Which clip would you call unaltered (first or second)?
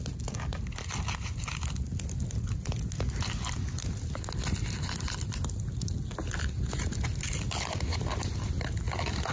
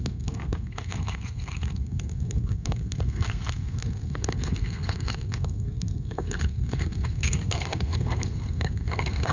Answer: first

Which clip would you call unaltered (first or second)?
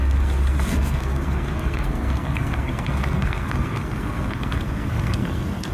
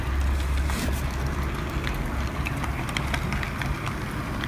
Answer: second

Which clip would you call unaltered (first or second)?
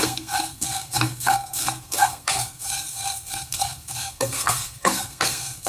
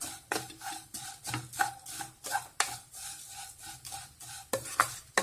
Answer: second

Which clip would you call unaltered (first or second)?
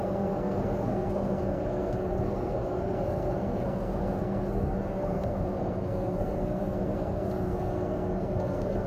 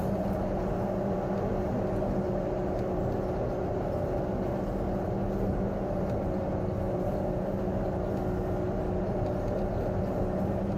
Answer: second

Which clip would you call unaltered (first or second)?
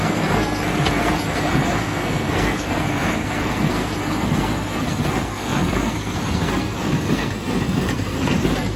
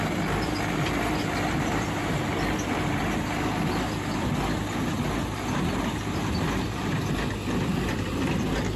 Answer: second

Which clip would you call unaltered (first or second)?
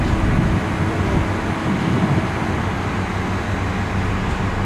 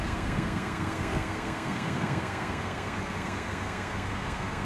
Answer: first